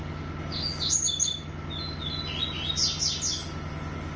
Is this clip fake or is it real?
real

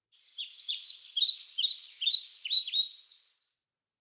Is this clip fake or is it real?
fake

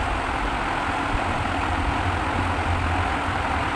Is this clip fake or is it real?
fake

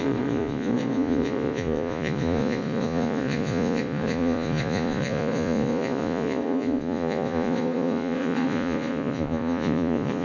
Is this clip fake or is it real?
fake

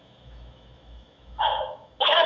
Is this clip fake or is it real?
fake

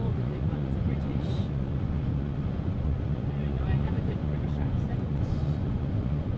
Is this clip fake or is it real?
fake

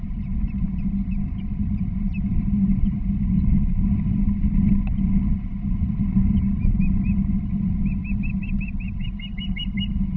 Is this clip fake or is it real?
real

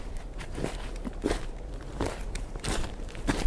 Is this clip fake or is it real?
fake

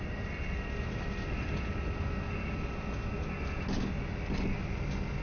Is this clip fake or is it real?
real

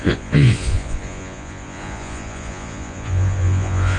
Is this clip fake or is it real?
fake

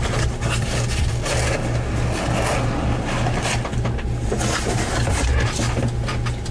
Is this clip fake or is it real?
real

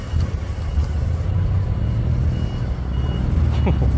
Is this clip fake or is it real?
real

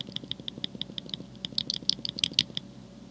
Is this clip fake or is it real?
real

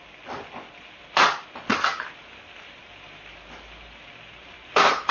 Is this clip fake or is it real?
real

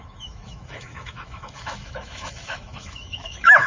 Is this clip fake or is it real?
fake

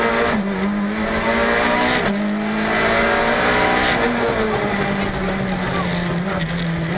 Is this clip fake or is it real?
real